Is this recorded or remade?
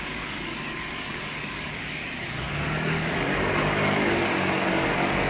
remade